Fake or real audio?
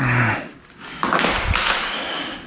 real